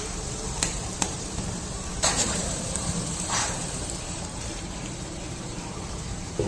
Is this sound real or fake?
fake